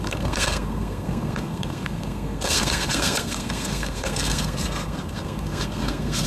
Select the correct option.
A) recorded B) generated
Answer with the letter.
B